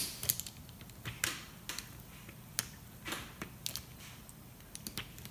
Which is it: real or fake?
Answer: real